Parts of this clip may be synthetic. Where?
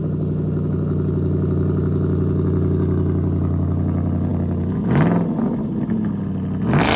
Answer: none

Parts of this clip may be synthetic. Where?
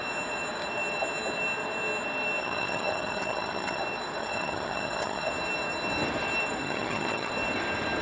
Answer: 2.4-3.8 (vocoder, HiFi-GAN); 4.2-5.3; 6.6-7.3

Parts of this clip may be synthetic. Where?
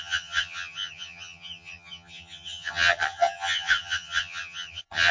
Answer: 0.0-5.1 (vocoder, HiFi-GAN)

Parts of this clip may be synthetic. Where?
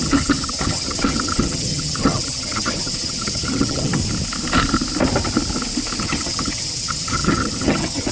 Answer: 0.0-4.0 (vocoder, HiFi-GAN); 6.0-8.1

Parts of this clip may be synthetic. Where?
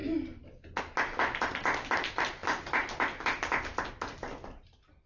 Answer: none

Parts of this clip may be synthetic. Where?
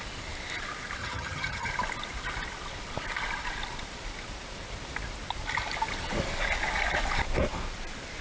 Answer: 1.0-1.7 (vocoder, HiFi-GAN)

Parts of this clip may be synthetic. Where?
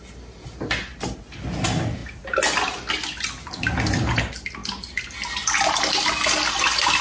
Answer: none